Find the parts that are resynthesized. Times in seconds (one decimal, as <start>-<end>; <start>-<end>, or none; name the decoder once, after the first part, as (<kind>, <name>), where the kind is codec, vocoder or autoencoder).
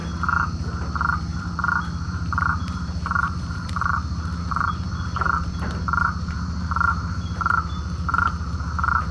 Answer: 1.4-9.1 (vocoder, BigVGAN v2)